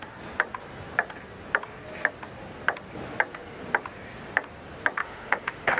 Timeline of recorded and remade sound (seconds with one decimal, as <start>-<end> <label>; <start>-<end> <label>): 0.0-5.0 recorded; 5.0-5.8 remade